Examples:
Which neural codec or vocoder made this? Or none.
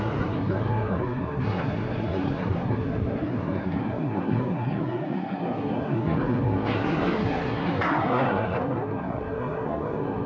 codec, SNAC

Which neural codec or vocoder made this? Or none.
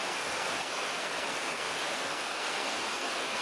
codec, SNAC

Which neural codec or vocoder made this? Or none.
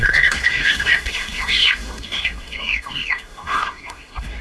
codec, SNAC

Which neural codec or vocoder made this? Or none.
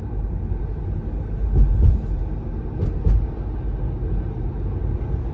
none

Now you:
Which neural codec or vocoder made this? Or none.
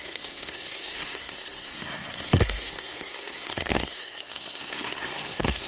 codec, SNAC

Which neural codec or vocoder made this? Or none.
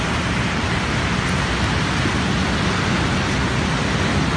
none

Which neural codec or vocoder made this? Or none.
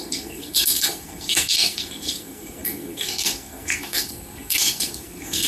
codec, SNAC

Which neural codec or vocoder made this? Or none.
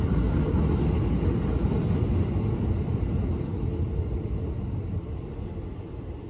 none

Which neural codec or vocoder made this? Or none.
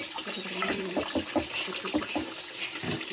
none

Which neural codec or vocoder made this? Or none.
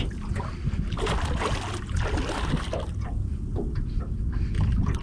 none